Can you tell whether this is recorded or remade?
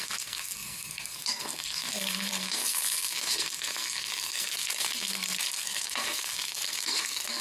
remade